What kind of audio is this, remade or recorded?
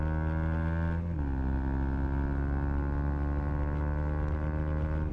recorded